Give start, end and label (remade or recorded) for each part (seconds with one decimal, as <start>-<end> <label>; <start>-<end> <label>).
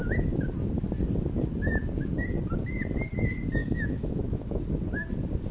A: 0.0-3.6 recorded; 3.6-4.6 remade; 4.6-5.5 recorded